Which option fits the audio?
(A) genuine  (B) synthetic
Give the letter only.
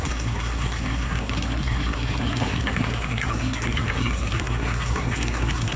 B